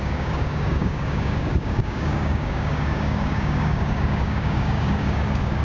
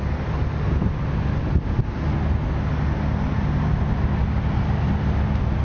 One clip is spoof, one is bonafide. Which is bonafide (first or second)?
second